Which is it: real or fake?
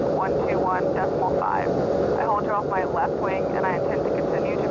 real